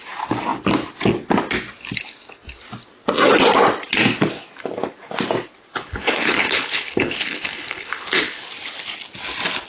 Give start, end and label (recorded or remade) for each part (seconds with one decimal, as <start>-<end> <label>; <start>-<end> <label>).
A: 0.0-5.7 recorded; 5.7-8.4 remade; 8.4-9.7 recorded